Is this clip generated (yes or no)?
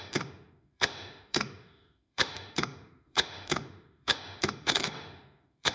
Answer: yes